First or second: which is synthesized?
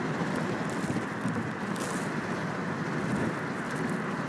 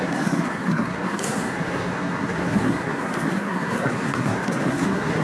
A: second